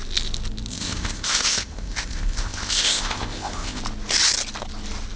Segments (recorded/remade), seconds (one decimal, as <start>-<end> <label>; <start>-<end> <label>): 0.0-0.7 recorded; 0.7-3.8 remade; 3.8-5.2 recorded